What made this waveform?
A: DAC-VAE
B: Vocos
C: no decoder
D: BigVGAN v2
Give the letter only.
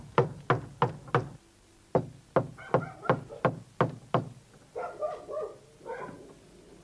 C